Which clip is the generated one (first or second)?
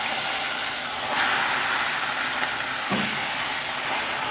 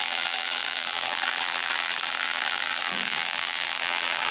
second